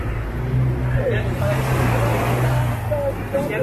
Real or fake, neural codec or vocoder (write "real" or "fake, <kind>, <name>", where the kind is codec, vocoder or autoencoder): real